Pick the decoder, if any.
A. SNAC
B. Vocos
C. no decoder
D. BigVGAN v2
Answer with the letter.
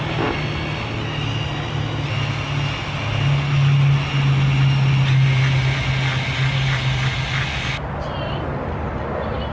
C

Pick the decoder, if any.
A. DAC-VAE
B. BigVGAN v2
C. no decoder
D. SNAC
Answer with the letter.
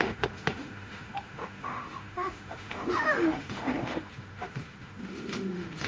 A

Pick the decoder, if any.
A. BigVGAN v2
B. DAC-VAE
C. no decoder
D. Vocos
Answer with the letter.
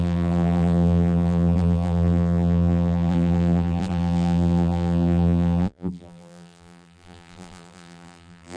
A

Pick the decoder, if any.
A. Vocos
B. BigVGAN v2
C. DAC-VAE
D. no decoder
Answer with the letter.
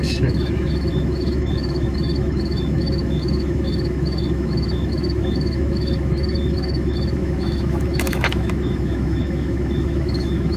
C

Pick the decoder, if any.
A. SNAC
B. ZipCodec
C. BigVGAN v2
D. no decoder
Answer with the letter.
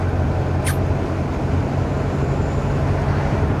D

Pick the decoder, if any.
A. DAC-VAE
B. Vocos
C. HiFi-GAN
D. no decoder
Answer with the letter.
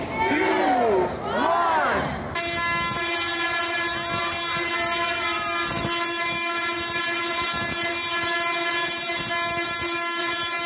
D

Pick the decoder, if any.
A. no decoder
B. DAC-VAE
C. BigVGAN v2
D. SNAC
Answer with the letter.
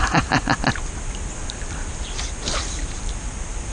A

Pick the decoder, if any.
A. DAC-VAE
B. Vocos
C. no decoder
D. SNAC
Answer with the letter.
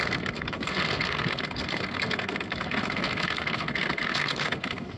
D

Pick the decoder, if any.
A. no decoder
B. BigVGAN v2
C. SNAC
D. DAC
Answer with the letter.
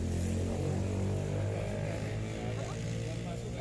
A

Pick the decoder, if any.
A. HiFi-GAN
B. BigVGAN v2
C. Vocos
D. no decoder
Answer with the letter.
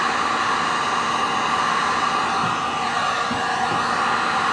D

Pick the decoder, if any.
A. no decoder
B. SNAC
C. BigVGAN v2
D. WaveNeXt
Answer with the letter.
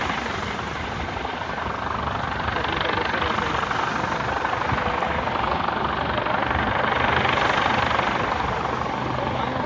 A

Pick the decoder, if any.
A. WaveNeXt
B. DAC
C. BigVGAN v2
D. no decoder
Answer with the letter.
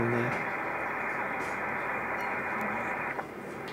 D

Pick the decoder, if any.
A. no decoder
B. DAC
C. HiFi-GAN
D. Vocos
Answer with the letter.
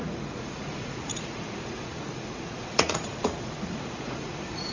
D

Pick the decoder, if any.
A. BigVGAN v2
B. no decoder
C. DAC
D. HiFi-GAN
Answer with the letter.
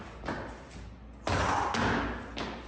B